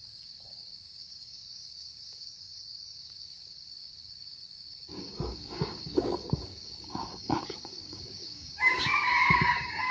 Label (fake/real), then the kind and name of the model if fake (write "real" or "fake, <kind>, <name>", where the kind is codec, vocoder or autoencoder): fake, codec, DAC